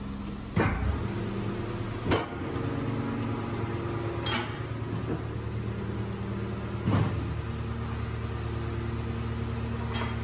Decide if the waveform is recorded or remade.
recorded